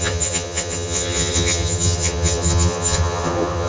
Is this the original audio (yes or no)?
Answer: no